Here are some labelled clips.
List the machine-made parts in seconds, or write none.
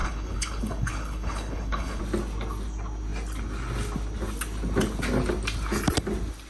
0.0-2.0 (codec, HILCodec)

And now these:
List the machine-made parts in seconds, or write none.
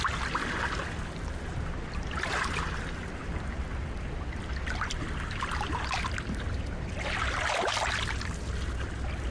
none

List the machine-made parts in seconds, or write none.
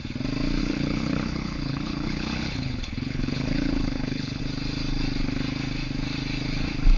0.6-4.4 (codec, HILCodec)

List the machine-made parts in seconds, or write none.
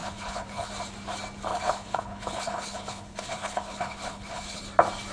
0.0-0.7 (codec, HILCodec); 1.5-4.6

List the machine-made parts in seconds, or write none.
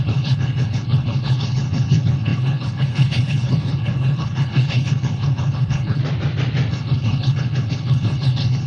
0.0-6.0 (codec, HILCodec); 6.7-8.7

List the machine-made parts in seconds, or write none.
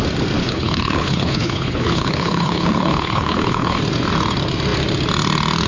0.4-3.8 (codec, HILCodec)